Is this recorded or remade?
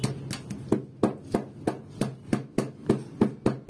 recorded